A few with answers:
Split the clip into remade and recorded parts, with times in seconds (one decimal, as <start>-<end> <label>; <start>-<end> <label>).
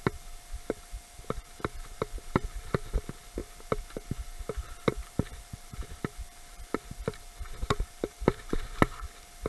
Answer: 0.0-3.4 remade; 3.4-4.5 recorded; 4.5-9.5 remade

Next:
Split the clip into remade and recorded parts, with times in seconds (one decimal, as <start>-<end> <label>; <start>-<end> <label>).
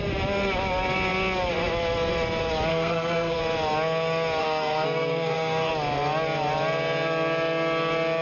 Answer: 0.0-2.7 recorded; 2.7-3.4 remade; 3.4-4.4 recorded; 4.4-5.7 remade; 5.7-8.2 recorded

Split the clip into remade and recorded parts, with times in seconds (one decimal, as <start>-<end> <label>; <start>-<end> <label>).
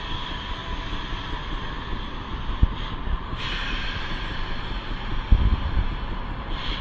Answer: 0.0-0.6 remade; 0.6-4.0 recorded; 4.0-5.1 remade; 5.1-6.8 recorded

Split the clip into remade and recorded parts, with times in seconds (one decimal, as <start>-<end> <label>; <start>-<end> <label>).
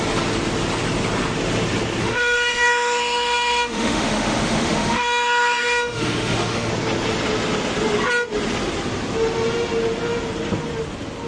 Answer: 0.0-2.0 recorded; 2.0-6.7 remade; 6.7-11.3 recorded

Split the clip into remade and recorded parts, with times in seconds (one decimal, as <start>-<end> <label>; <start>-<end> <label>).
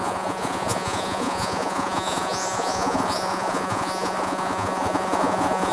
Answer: 0.0-5.7 remade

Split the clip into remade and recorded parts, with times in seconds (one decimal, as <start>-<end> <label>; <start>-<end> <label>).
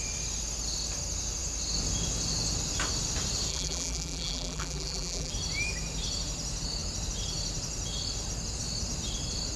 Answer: 0.0-3.5 recorded; 3.5-5.3 remade; 5.3-9.6 recorded